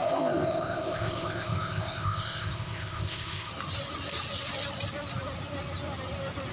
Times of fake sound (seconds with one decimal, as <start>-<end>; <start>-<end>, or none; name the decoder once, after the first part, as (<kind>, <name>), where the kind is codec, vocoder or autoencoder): 0.0-3.5 (codec, ZipCodec)